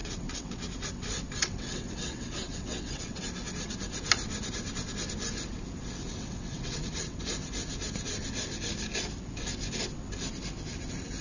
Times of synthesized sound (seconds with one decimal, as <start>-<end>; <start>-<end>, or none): 0.0-0.6; 1.4-3.3; 6.0-7.3